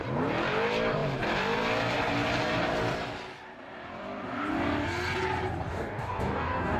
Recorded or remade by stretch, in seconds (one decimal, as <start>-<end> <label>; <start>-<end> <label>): 0.0-5.7 recorded; 5.7-6.8 remade